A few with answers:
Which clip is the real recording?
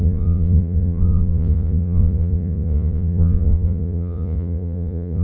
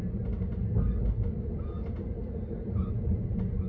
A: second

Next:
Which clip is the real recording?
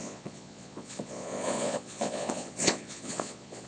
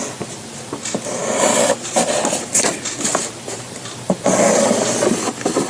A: second